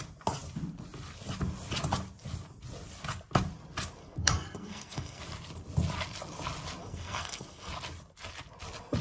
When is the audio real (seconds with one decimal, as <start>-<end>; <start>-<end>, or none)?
0.0-4.0; 5.2-6.8; 7.7-9.0